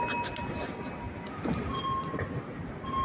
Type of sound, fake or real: real